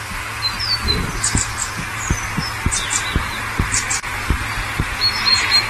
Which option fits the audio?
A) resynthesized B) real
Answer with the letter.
B